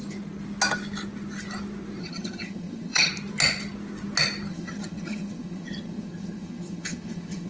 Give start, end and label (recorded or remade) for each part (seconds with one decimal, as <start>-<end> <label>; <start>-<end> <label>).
0.0-2.0 recorded; 2.0-3.1 remade; 3.1-4.5 recorded; 4.5-7.5 remade